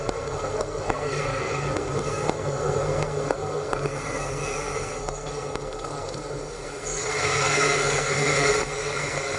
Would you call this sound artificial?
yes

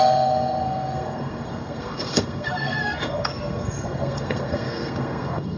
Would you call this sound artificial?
yes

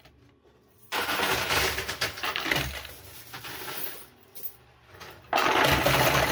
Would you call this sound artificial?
no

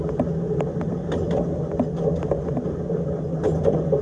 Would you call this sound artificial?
no